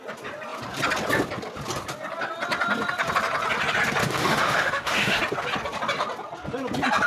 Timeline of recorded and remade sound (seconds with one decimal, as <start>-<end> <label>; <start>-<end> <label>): 0.0-4.0 recorded; 4.0-5.2 remade; 5.2-7.1 recorded

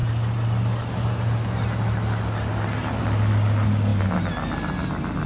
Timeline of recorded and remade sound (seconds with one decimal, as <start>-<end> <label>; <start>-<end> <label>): 0.0-5.3 recorded